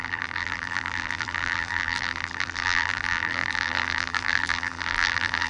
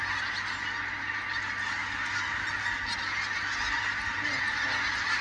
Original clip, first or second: second